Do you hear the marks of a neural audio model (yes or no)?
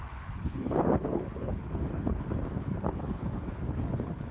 yes